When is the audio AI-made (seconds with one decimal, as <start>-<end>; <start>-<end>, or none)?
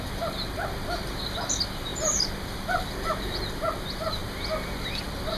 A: none